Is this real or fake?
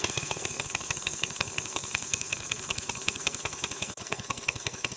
fake